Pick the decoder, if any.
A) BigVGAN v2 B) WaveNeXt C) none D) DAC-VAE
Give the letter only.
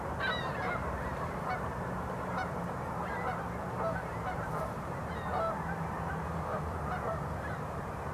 A